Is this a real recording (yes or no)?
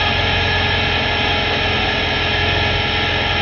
yes